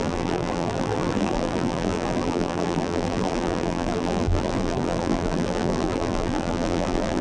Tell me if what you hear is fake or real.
fake